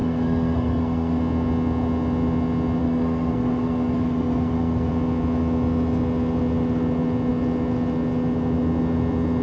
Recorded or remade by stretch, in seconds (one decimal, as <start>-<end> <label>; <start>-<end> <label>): 0.0-1.2 remade; 1.2-2.8 recorded; 2.8-4.9 remade; 4.9-9.4 recorded